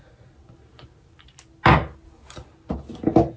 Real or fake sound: real